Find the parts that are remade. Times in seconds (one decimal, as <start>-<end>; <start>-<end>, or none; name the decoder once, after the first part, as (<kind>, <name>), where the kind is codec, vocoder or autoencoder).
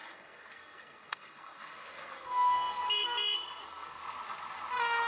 0.0-2.8 (codec, SNAC); 3.6-4.0